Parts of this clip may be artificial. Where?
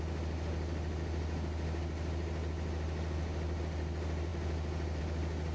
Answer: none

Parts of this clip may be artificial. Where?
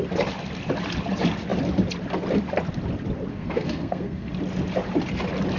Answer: 3.3-4.3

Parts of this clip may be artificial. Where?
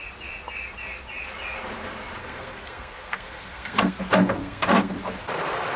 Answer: 2.2-4.0; 4.4-4.9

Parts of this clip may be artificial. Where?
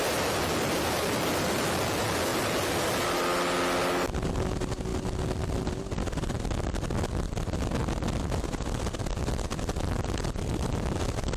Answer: none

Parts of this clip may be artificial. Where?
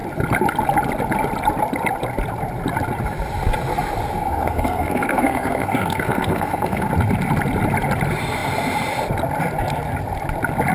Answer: 4.2-6.9